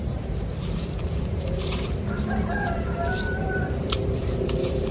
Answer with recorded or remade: remade